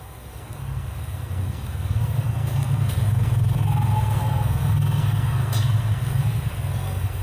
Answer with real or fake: fake